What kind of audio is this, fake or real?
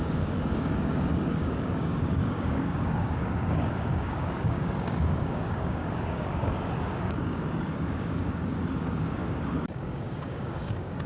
fake